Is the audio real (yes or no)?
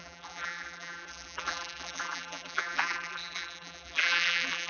no